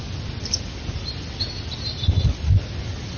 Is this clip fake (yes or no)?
no